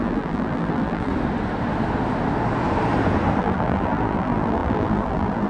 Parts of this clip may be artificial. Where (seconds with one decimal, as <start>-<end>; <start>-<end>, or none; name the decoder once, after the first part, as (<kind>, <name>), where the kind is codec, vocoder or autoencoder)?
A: 0.0-1.1 (vocoder, BigVGAN v2); 3.4-5.5

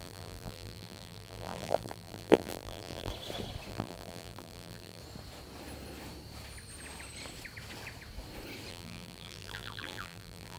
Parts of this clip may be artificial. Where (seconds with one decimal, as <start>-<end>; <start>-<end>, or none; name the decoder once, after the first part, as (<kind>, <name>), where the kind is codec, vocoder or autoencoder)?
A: 0.0-3.1 (vocoder, BigVGAN v2); 3.7-5.0; 8.7-10.6